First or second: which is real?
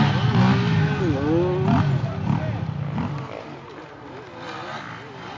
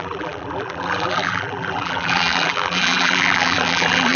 first